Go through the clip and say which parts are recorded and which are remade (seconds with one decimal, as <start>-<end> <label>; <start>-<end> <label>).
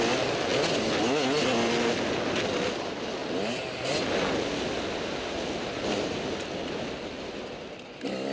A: 0.0-8.3 recorded